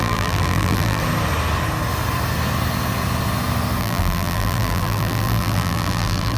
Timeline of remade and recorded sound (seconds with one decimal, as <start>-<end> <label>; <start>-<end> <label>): 0.0-1.0 remade; 1.0-3.8 recorded; 3.8-6.4 remade